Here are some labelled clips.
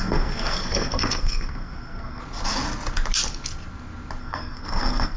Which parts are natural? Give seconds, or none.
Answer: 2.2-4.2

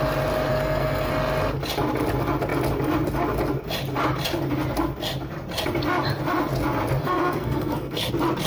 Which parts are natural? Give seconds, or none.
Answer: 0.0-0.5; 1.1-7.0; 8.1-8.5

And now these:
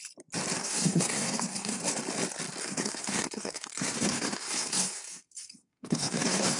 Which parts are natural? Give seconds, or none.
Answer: 0.0-0.6; 1.8-2.6

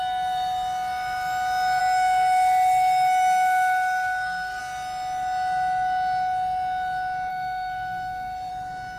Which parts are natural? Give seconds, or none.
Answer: 0.0-1.8; 4.6-7.3; 8.5-9.0

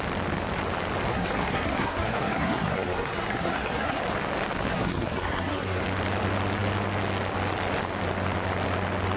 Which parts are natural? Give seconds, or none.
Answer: 0.0-1.1; 4.0-4.7; 5.8-9.2

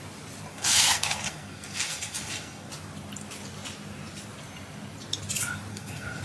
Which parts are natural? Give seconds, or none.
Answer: 0.0-0.5; 2.7-5.7

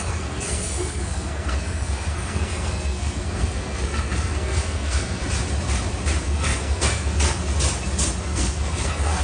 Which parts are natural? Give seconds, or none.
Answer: 5.2-6.2; 7.4-8.2

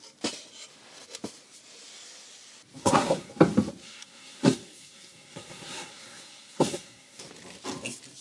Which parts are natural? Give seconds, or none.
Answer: 0.0-2.8; 3.3-3.8; 7.2-8.2